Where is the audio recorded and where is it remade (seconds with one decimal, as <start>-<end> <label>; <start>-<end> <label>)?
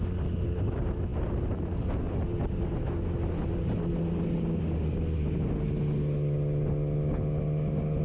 0.0-8.0 recorded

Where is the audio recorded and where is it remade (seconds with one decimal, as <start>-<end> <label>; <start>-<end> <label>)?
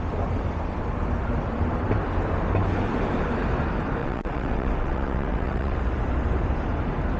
0.0-4.0 recorded; 4.0-5.8 remade; 5.8-7.2 recorded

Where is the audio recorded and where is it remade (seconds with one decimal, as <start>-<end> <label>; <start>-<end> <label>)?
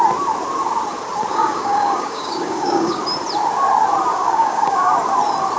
0.0-1.3 recorded; 1.3-3.0 remade; 3.0-4.1 recorded; 4.1-4.9 remade; 4.9-5.6 recorded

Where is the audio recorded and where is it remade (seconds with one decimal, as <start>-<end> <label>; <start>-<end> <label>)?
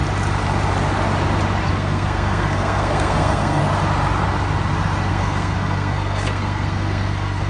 0.0-1.7 recorded; 1.7-3.6 remade; 3.6-5.1 recorded; 5.1-7.5 remade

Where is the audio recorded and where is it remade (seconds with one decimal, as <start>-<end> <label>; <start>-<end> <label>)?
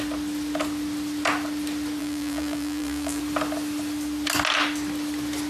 0.0-2.0 recorded; 2.0-3.2 remade; 3.2-5.5 recorded